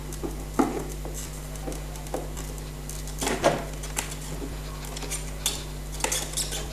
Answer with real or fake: real